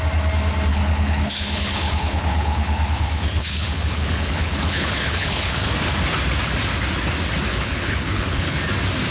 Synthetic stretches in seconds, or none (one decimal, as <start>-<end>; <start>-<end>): 0.7-5.7; 7.5-8.6